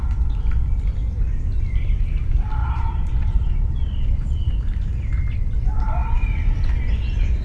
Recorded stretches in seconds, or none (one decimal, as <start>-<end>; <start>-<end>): 0.0-2.6; 4.5-7.4